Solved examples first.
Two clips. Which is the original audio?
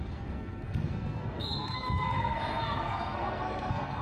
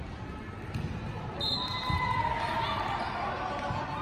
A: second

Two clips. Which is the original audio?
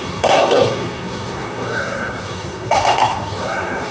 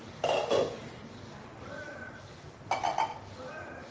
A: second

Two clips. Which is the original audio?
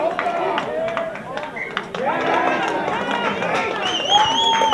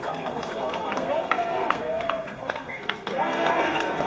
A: first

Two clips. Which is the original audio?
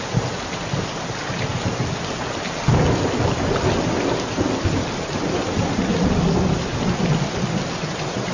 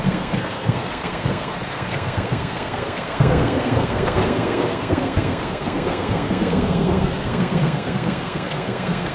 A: first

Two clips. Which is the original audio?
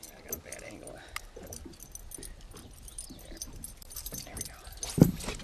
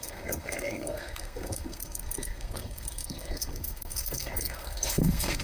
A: first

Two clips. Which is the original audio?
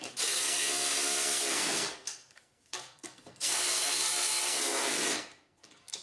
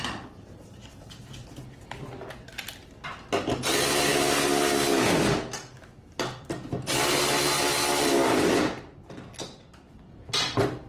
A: second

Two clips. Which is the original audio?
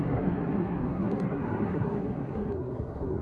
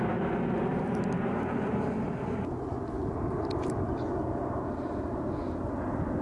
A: second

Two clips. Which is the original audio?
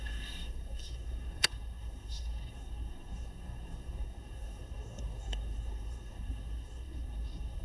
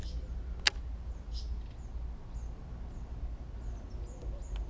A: second